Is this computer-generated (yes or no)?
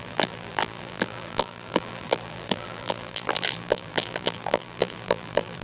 yes